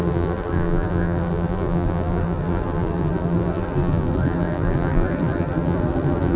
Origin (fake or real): fake